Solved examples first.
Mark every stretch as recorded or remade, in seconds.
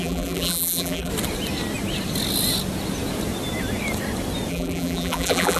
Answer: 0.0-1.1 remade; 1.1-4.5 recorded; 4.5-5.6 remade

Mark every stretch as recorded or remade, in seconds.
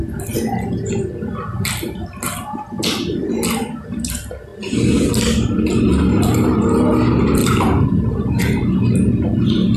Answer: 0.0-7.4 recorded; 7.4-8.4 remade; 8.4-9.8 recorded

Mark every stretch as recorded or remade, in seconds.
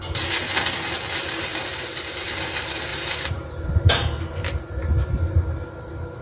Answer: 0.0-1.5 recorded; 1.5-2.3 remade; 2.3-2.9 recorded; 2.9-3.8 remade; 3.8-6.2 recorded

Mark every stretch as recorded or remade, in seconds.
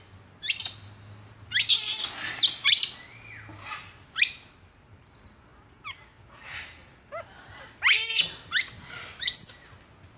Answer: 0.0-10.2 recorded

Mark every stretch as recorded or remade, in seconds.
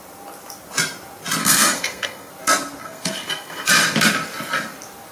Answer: 0.0-1.4 recorded; 1.4-2.3 remade; 2.3-2.8 recorded; 2.8-3.7 remade; 3.7-5.1 recorded